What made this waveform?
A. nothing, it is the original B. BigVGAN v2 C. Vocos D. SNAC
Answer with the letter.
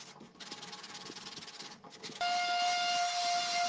A